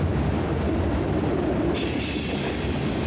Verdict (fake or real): real